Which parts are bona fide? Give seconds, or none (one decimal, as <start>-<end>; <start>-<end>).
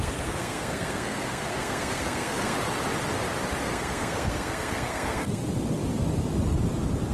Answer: 2.6-3.6; 5.4-7.1